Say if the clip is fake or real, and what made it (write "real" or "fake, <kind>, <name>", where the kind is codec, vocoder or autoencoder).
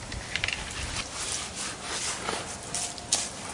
real